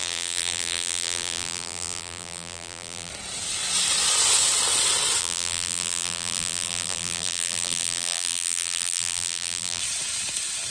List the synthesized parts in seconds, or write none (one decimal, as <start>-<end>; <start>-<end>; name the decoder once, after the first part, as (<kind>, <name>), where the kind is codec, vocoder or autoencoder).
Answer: 0.0-3.1 (vocoder, BigVGAN v2); 5.2-9.8

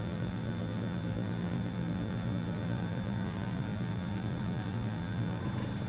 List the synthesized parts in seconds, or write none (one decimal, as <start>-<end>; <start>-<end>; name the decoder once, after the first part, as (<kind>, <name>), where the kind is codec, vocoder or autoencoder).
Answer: 0.0-5.4 (vocoder, BigVGAN v2)